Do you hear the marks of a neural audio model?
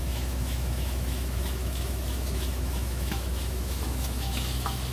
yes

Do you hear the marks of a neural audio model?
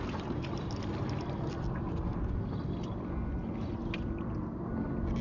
no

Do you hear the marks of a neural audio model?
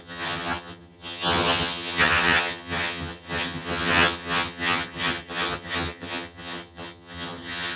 yes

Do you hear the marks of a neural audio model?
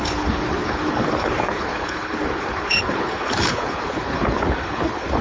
yes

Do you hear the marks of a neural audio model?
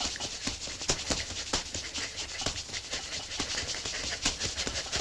no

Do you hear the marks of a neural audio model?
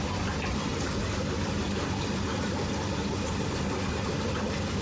no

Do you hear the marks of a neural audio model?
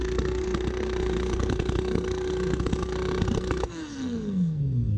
yes